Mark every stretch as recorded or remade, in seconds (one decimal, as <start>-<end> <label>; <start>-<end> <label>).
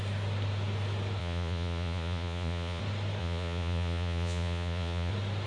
0.0-1.2 recorded; 1.2-2.8 remade; 2.8-3.2 recorded; 3.2-5.1 remade; 5.1-5.5 recorded